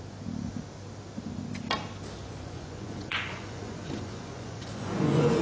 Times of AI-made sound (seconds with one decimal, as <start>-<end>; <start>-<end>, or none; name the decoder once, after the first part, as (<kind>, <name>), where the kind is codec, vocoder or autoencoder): 2.2-5.4 (vocoder, Vocos)